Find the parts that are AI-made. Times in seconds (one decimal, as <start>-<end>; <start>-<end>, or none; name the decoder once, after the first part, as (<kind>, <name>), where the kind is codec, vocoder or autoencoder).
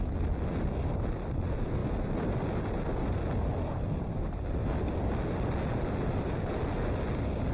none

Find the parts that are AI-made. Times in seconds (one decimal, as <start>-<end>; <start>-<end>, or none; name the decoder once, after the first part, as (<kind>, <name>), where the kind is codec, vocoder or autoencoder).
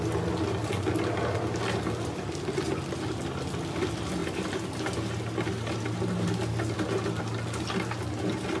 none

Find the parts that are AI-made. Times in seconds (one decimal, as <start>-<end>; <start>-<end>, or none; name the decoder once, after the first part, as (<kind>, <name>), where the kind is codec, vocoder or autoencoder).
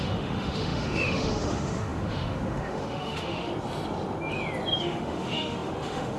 0.0-3.5 (autoencoder, DAC-VAE); 4.8-6.2